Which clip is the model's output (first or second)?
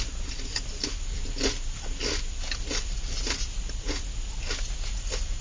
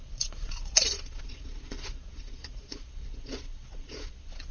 second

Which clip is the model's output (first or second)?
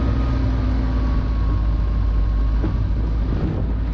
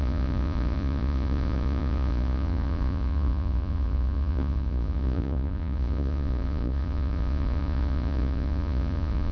second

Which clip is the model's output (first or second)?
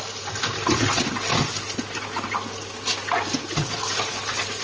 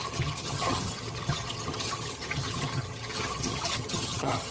second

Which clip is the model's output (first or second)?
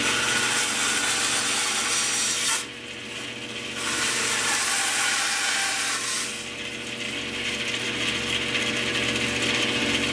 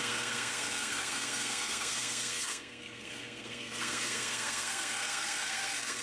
second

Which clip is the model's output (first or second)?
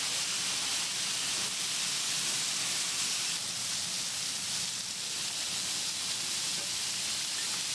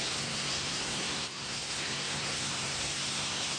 second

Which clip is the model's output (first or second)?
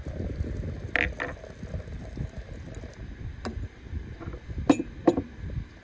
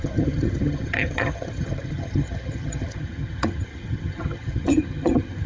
second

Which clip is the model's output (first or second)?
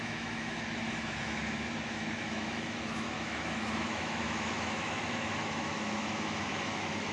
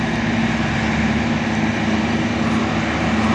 first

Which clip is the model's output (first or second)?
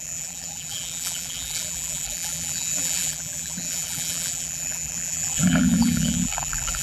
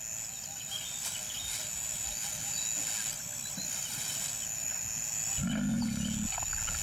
first